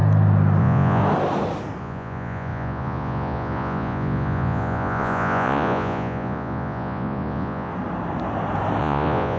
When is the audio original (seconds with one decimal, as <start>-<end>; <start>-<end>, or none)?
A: 0.0-0.6; 1.0-1.8; 7.7-8.8